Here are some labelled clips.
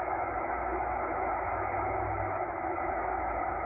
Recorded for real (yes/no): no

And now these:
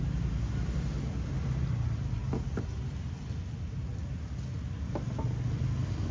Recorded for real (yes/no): yes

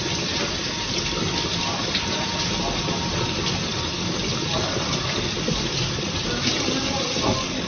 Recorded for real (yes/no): yes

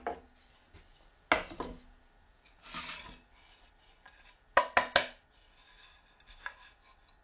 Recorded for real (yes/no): yes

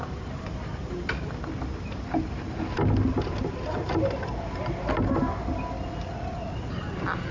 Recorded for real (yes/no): yes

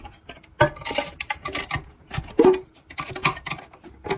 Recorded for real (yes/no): yes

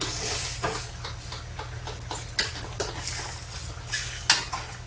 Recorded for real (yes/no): yes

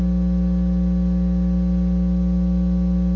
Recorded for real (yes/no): yes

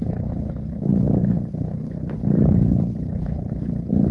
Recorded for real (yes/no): no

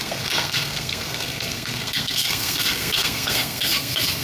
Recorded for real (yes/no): no